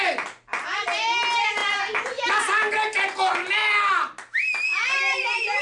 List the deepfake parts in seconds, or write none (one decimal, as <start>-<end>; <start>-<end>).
none